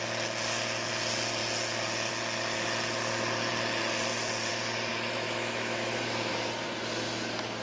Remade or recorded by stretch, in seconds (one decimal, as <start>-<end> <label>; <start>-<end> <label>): 0.0-4.9 recorded; 4.9-6.3 remade; 6.3-7.6 recorded